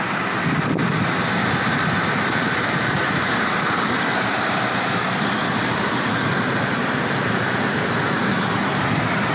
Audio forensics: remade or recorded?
remade